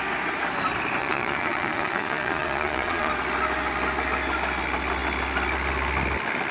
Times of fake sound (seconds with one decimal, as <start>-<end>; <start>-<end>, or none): 1.0-3.1